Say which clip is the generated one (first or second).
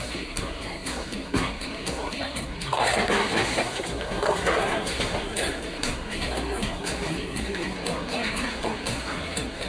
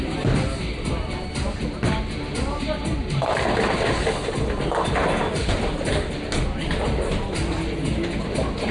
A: first